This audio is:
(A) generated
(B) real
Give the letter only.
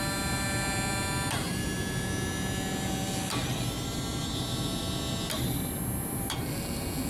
B